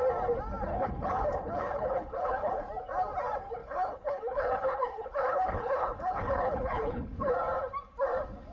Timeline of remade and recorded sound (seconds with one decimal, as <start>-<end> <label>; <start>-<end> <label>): 0.0-0.7 recorded; 0.7-2.6 remade; 2.6-3.6 recorded; 3.6-7.3 remade; 7.3-8.5 recorded

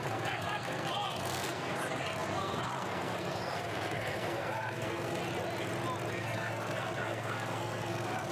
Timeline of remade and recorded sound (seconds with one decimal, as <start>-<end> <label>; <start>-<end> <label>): 0.0-5.2 remade; 5.2-6.1 recorded; 6.1-8.3 remade

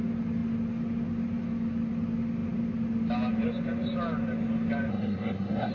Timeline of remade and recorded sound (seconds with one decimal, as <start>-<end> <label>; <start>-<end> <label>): 0.0-4.9 recorded; 4.9-5.7 remade

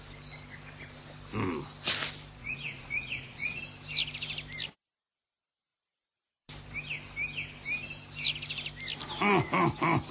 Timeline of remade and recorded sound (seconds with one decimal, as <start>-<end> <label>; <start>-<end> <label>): 0.0-2.4 recorded; 2.4-3.6 remade; 3.6-10.1 recorded

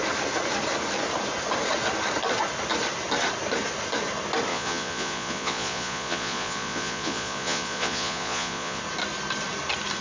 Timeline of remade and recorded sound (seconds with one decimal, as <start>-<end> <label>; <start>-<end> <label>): 0.0-4.5 recorded; 4.5-8.8 remade; 8.8-10.0 recorded

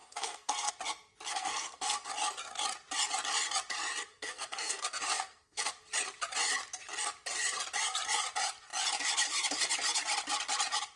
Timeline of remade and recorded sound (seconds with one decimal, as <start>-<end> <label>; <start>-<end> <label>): 0.0-0.7 remade; 0.7-1.3 recorded; 1.3-2.1 remade; 2.1-4.1 recorded; 4.1-5.7 remade; 5.7-11.0 recorded

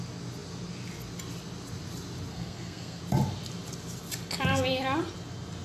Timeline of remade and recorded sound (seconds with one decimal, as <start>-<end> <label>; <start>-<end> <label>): 0.0-2.3 recorded; 2.3-3.0 remade; 3.0-5.6 recorded

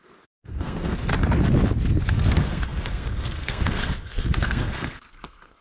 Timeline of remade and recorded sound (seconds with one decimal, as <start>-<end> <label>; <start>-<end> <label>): 0.0-1.1 remade; 1.1-2.1 recorded; 2.1-5.6 remade